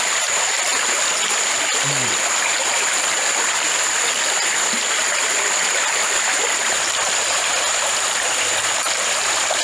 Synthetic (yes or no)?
no